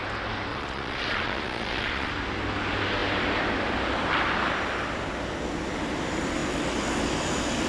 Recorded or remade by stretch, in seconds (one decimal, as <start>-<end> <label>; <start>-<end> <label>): 0.0-0.5 recorded; 0.5-2.1 remade; 2.1-7.7 recorded